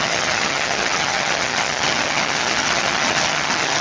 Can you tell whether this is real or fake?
fake